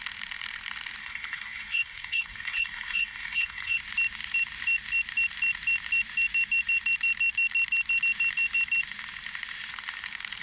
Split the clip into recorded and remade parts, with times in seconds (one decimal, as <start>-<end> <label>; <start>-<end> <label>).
0.0-1.0 recorded; 1.0-3.8 remade; 3.8-10.4 recorded